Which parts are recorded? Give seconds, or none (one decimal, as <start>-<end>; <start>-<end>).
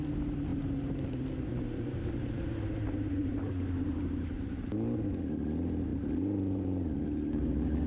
0.0-0.5; 4.5-5.9; 7.5-7.9